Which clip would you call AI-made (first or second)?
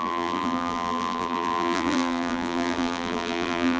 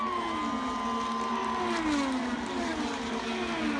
first